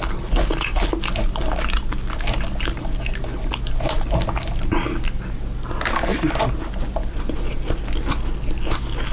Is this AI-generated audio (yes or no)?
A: no